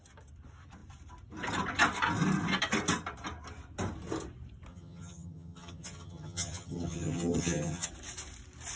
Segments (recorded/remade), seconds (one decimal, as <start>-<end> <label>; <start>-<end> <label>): 0.0-4.7 recorded; 4.7-7.9 remade; 7.9-8.8 recorded